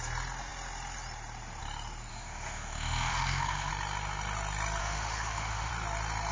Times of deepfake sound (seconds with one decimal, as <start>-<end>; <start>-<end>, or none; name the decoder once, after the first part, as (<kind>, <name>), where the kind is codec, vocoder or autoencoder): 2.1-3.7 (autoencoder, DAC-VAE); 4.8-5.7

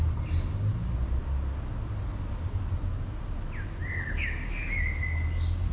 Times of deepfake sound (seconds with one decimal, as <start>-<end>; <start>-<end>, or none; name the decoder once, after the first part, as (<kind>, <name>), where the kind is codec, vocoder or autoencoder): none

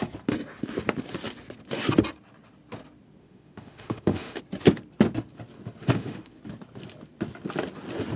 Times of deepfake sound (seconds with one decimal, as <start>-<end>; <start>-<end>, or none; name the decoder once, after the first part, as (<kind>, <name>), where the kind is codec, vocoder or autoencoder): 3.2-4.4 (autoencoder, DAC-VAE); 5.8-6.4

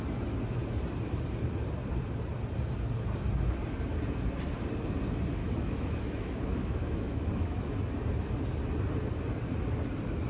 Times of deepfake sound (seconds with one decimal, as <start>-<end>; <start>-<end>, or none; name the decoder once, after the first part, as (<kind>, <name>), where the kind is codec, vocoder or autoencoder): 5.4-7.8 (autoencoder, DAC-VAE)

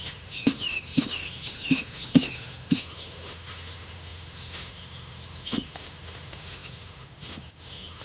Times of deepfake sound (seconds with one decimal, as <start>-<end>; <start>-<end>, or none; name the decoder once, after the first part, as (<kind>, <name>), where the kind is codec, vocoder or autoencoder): 0.0-8.0 (autoencoder, DAC-VAE)

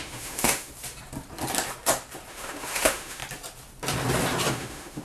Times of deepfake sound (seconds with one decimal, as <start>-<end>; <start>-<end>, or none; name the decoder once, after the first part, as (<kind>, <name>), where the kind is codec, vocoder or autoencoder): 0.0-0.7 (autoencoder, DAC-VAE); 2.3-3.2; 4.5-5.0

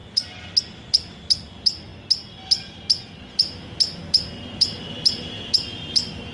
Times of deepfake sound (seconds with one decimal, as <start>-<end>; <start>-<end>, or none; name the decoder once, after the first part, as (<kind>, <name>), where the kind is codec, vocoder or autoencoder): none

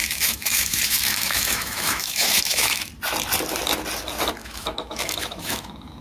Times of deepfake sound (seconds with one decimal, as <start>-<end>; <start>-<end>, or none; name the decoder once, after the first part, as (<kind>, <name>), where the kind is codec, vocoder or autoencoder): 0.0-2.9 (autoencoder, DAC-VAE); 4.4-6.0